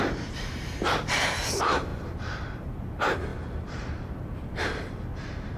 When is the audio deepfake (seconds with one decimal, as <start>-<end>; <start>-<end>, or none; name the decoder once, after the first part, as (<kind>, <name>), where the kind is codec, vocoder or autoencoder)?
0.0-5.6 (vocoder, BigVGAN v2)